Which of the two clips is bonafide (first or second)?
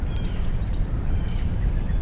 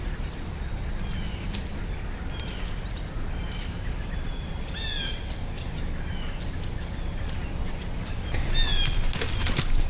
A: second